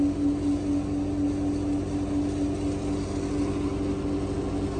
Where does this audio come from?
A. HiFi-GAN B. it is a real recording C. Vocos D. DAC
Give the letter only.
B